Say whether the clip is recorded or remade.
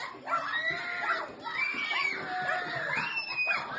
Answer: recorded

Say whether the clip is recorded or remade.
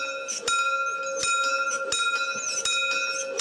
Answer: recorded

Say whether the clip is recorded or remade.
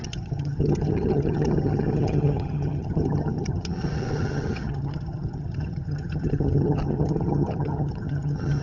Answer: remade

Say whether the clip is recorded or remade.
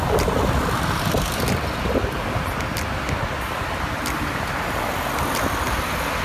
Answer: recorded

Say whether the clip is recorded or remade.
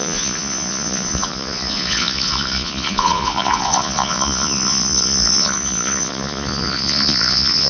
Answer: remade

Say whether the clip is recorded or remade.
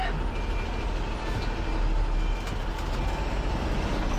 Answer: recorded